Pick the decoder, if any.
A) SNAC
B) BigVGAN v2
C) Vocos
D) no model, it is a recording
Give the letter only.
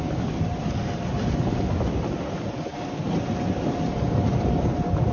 D